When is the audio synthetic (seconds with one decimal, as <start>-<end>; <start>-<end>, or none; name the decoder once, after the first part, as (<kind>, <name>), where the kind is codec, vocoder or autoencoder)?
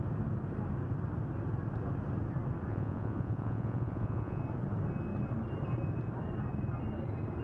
2.7-4.4 (vocoder, Vocos)